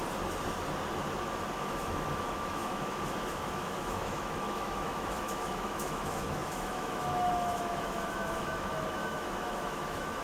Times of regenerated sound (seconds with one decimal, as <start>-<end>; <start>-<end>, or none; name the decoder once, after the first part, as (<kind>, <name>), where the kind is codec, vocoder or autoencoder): 1.6-10.2 (autoencoder, DAC-VAE)